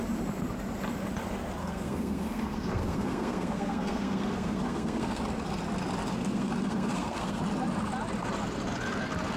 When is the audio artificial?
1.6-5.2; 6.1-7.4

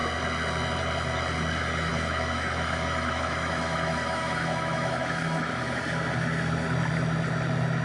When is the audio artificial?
1.9-5.8

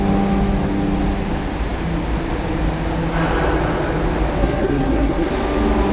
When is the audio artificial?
4.4-5.3